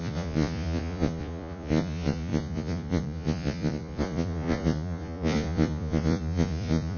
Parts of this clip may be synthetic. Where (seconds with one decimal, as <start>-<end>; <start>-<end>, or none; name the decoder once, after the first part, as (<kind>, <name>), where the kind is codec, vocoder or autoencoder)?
0.0-7.0 (vocoder, Vocos)